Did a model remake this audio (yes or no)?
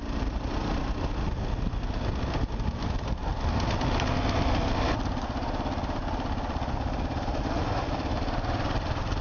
no